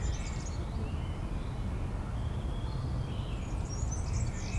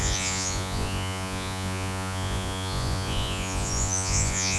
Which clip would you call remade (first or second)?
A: second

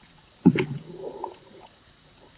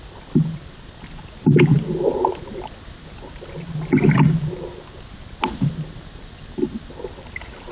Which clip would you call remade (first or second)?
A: first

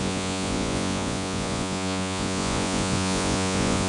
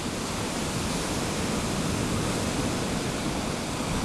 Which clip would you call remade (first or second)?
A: first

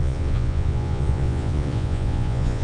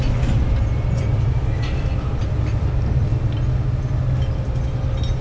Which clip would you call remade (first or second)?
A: first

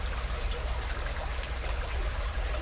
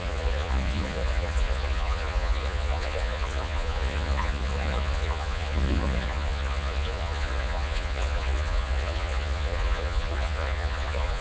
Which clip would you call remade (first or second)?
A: second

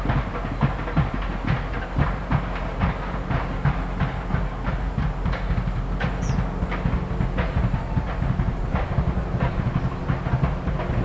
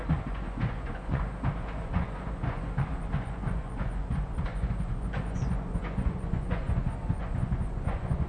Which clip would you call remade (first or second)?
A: second